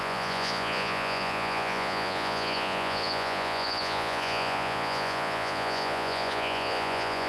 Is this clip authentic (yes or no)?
no